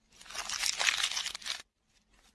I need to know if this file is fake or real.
real